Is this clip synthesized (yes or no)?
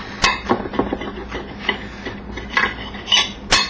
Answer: no